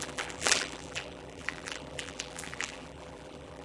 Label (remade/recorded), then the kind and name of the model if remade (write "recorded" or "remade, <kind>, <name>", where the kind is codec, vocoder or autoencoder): remade, vocoder, BigVGAN v2